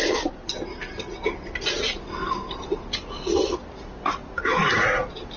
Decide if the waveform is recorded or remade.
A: recorded